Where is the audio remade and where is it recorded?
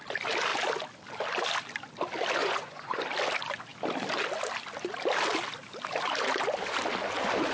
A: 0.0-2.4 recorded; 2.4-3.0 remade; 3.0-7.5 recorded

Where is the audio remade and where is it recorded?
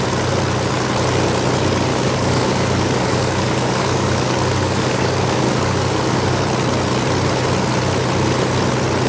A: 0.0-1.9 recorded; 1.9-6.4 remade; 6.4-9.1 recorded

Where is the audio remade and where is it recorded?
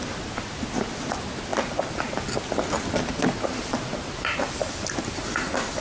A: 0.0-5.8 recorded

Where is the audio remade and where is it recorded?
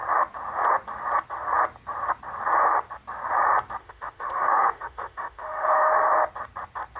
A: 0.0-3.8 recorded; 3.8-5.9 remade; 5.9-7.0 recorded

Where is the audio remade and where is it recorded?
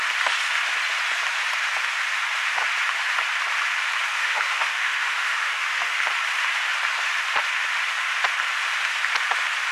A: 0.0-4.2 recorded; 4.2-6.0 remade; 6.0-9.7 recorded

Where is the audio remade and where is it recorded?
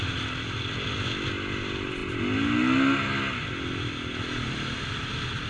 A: 0.0-5.5 recorded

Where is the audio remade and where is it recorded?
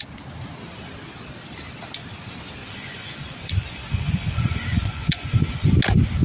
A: 0.0-2.6 recorded; 2.6-5.7 remade; 5.7-6.2 recorded